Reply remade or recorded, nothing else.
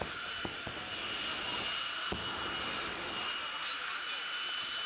recorded